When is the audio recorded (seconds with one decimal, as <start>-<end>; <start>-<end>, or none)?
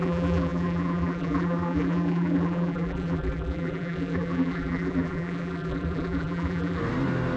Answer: 6.8-7.4